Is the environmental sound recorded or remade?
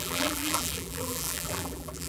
remade